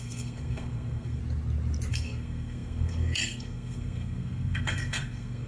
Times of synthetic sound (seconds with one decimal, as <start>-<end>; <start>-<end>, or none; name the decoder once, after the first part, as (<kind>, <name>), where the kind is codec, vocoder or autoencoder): 0.0-1.2 (codec, SNAC); 1.9-5.5